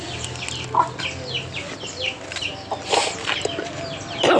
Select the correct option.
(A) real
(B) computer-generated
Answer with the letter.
A